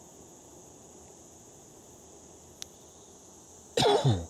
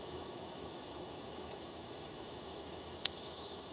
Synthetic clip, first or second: second